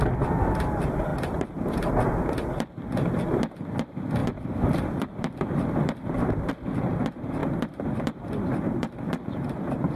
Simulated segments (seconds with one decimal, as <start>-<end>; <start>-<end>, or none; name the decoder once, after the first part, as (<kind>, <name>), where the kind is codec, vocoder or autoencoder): 1.1-1.9 (vocoder, BigVGAN v2); 4.2-6.5; 7.4-9.2